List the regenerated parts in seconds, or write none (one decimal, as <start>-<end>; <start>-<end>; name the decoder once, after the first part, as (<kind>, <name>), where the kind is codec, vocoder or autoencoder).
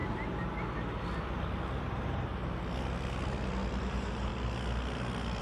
1.8-2.4 (vocoder, BigVGAN v2); 3.8-4.3